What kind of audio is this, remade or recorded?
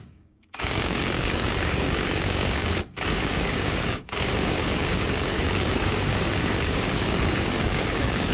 remade